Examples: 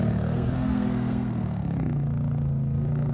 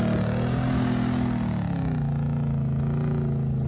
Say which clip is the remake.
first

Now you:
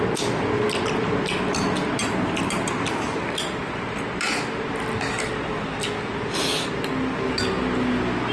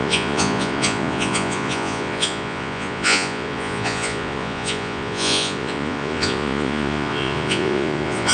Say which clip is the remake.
second